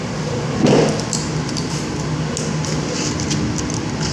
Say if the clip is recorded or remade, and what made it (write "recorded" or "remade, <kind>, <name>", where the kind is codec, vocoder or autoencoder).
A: remade, vocoder, BigVGAN v2